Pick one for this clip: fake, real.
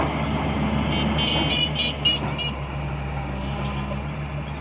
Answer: real